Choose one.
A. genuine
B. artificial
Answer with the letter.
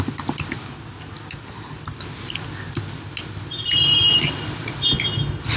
A